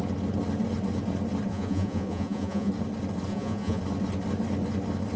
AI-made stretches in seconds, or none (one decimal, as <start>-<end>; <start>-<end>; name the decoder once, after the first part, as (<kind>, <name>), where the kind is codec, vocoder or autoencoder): 1.5-2.7 (vocoder, Vocos); 3.3-3.8